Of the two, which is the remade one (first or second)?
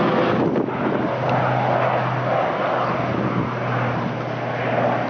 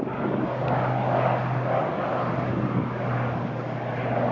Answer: second